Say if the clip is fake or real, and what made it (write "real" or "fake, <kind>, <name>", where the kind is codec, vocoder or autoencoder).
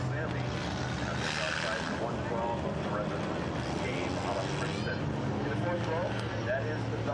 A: real